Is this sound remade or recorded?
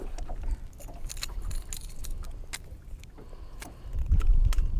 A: recorded